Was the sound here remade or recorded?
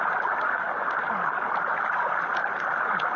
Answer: recorded